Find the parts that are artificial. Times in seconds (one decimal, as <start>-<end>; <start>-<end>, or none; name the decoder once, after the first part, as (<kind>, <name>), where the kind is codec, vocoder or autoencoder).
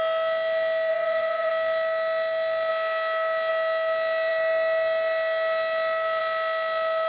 0.9-1.5 (vocoder, Vocos)